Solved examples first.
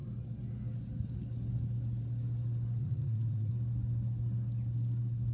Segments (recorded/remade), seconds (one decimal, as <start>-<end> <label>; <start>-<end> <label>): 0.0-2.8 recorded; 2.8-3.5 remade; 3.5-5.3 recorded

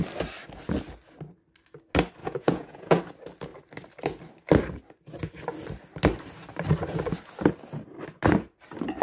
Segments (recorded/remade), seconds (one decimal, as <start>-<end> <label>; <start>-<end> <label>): 0.0-2.2 recorded; 2.2-3.0 remade; 3.0-9.0 recorded

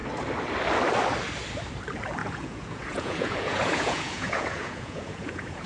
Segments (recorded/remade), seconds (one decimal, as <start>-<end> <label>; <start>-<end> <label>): 0.0-2.2 recorded; 2.2-5.7 remade